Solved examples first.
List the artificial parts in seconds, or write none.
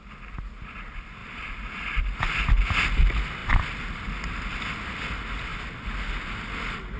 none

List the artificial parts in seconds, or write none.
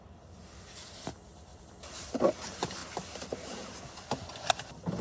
0.0-2.8 (vocoder, BigVGAN v2); 4.5-5.0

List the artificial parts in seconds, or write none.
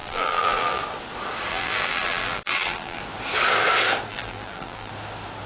0.0-0.8 (vocoder, BigVGAN v2); 1.5-3.0; 4.1-4.9